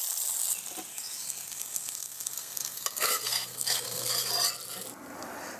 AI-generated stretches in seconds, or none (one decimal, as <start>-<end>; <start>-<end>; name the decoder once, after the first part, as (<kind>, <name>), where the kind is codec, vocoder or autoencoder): 0.9-4.3 (codec, SNAC)

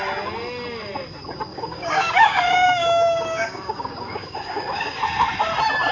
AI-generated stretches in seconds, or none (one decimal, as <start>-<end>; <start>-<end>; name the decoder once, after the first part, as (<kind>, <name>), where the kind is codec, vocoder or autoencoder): 1.5-5.0 (codec, DAC)